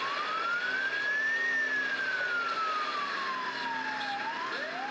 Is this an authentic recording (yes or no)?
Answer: yes